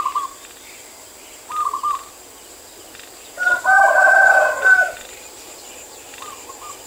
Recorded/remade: recorded